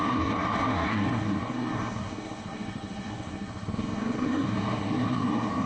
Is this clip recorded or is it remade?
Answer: remade